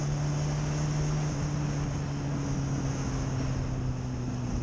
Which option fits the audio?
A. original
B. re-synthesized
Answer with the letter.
A